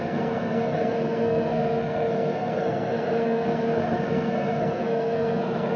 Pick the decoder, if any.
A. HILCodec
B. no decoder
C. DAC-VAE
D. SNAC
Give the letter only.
D